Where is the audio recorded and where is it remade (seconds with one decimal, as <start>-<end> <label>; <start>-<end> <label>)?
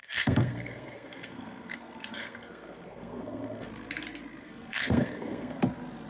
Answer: 0.0-3.7 remade; 3.7-4.4 recorded; 4.4-5.6 remade; 5.6-6.1 recorded